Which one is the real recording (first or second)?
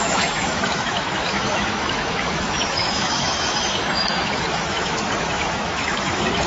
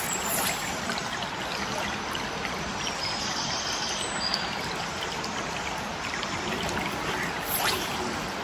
second